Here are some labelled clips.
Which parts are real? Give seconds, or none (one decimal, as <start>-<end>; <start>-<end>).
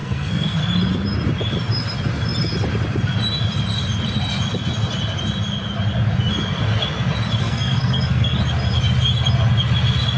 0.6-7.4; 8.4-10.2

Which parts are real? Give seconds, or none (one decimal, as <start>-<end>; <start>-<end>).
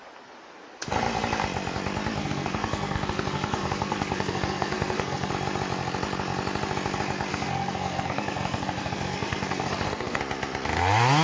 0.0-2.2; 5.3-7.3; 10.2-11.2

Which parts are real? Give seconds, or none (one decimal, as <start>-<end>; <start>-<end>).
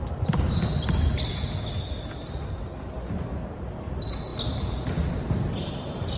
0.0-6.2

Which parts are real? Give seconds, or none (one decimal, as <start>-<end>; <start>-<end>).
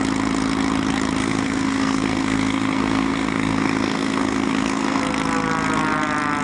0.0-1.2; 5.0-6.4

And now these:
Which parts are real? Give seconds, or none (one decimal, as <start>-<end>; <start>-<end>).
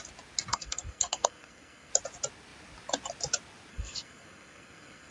0.0-0.5; 1.9-3.7